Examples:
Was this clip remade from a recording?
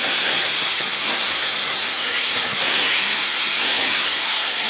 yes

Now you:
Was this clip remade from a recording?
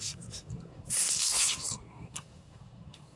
yes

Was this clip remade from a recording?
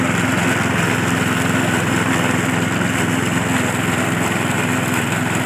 no